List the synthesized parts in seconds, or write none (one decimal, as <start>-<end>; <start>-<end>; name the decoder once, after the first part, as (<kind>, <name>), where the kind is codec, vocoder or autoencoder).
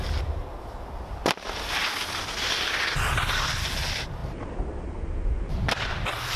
none